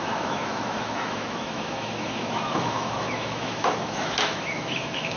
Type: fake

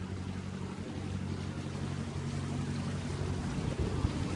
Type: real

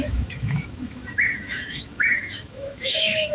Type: fake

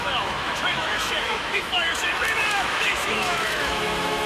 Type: fake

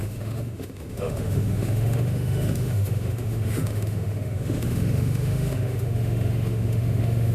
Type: fake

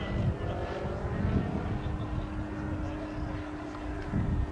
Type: real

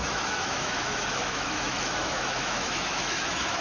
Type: fake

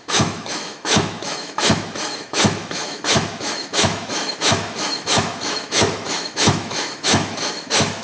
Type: fake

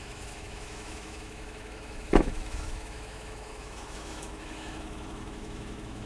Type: fake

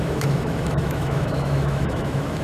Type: fake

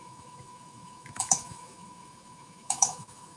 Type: fake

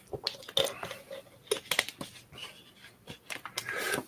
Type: real